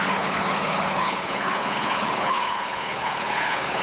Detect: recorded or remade remade